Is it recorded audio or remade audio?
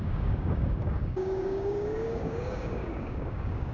remade